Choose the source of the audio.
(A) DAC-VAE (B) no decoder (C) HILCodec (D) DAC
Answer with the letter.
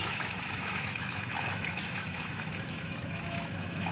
A